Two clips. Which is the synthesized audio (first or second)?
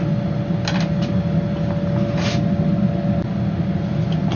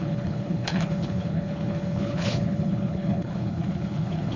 second